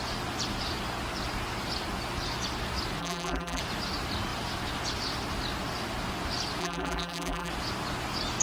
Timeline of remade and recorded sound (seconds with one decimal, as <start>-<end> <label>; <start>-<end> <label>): 0.0-3.0 recorded; 3.0-3.6 remade; 3.6-6.6 recorded; 6.6-7.5 remade; 7.5-8.4 recorded